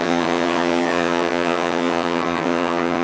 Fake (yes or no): yes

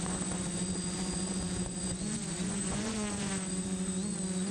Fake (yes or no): yes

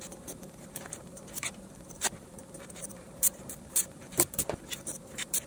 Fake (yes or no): yes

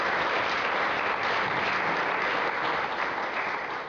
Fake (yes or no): no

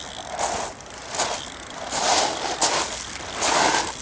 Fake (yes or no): no